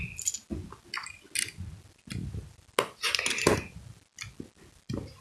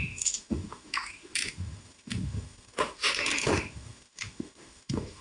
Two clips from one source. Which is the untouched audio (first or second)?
first